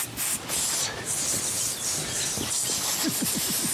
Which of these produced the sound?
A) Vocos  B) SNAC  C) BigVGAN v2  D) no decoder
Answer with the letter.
D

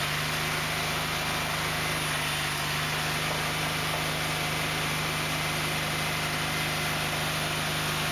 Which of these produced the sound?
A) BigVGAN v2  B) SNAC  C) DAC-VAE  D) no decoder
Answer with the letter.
D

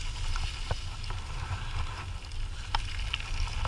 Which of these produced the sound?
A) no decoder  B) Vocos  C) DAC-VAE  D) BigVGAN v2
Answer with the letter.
A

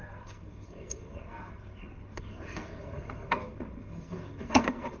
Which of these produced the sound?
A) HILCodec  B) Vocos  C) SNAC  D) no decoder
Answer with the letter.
C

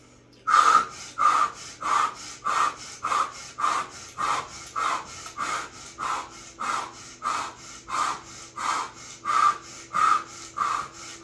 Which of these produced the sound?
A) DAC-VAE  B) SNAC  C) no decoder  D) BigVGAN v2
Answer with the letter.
C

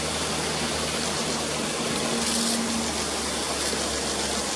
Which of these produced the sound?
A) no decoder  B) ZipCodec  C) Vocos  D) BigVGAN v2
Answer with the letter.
A